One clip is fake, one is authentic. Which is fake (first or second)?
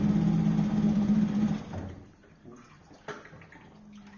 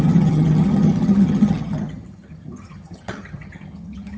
second